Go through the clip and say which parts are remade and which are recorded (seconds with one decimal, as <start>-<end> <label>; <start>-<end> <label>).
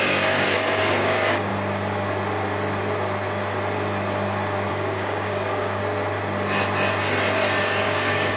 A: 0.0-1.5 remade; 1.5-4.7 recorded; 4.7-5.8 remade; 5.8-7.6 recorded; 7.6-8.4 remade